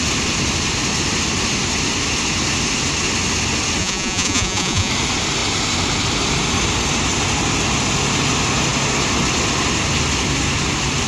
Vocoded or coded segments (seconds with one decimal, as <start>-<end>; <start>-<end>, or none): 3.8-4.9